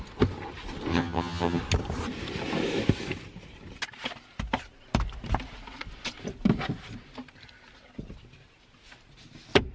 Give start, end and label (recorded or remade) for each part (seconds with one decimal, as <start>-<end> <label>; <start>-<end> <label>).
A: 0.0-0.9 recorded; 0.9-1.6 remade; 1.6-9.7 recorded